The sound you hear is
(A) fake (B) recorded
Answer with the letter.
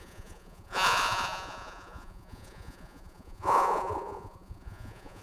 A